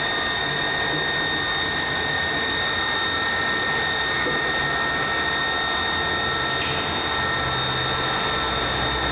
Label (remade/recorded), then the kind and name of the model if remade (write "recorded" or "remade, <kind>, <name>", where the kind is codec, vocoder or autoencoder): recorded